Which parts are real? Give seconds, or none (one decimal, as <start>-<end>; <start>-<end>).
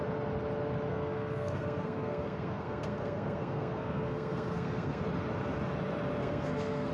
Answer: 0.0-0.9; 5.0-6.2